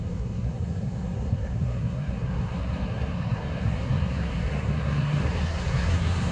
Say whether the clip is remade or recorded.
remade